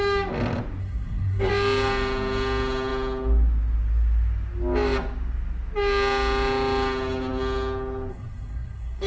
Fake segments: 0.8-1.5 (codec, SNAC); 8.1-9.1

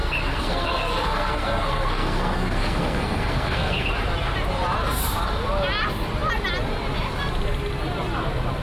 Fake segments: 0.0-3.9 (codec, SNAC)

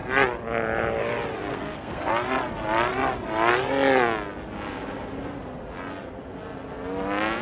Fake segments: 1.5-2.1 (codec, SNAC)

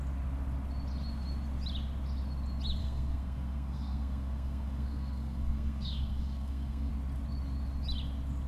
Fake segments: 2.8-6.9 (codec, SNAC)

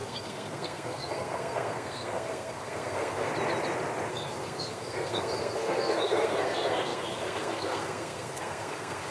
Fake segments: 0.0-3.3 (codec, SNAC); 4.1-9.1

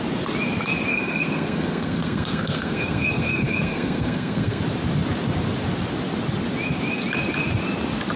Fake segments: 0.9-4.6 (codec, SNAC)

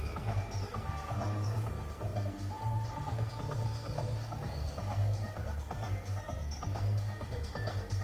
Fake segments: 0.0-8.0 (codec, SNAC)